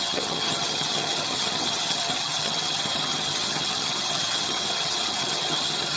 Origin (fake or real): fake